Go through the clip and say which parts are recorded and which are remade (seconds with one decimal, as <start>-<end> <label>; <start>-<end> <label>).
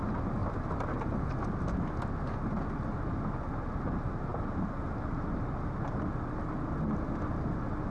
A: 0.0-7.9 recorded